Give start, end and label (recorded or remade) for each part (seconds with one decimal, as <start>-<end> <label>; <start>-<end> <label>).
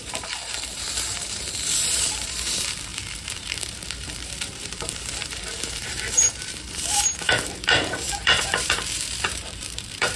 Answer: 0.0-10.2 remade